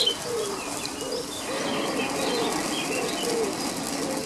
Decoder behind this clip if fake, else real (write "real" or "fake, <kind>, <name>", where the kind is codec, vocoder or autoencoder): real